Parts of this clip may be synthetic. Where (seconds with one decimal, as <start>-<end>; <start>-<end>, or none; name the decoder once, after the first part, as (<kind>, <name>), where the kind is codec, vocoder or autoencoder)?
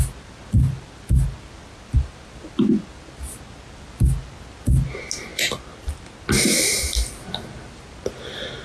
none